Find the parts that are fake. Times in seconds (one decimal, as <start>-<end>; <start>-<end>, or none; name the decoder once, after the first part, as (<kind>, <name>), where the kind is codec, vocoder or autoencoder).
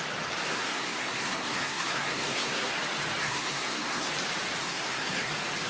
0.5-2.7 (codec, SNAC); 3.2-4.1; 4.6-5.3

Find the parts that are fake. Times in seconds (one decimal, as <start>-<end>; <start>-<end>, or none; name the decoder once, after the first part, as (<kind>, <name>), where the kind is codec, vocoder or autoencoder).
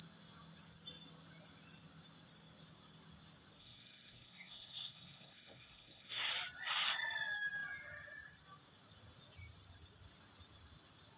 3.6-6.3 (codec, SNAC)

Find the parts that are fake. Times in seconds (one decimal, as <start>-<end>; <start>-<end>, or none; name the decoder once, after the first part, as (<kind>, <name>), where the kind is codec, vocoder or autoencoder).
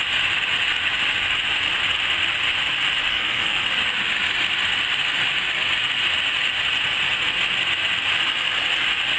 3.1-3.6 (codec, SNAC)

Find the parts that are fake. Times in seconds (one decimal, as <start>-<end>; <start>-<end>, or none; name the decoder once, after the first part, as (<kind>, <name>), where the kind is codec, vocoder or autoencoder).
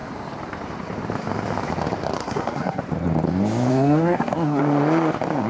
2.2-2.8 (codec, SNAC); 3.7-4.6